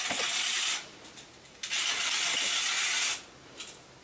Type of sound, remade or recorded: recorded